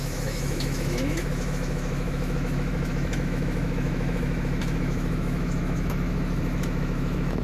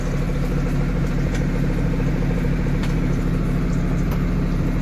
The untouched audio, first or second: second